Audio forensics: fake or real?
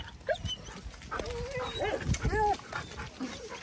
real